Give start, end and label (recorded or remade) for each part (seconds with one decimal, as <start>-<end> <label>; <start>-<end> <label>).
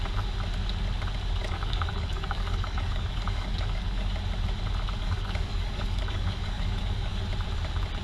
0.0-1.4 recorded; 1.4-4.1 remade; 4.1-5.0 recorded; 5.0-7.2 remade; 7.2-8.0 recorded